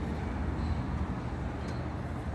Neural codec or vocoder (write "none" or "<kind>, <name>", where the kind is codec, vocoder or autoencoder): none